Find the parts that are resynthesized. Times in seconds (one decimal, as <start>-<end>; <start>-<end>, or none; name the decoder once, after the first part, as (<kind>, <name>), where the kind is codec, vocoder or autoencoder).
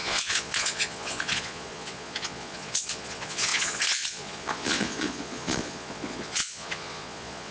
0.0-7.5 (vocoder, Vocos)